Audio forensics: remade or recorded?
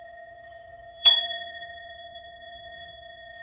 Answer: remade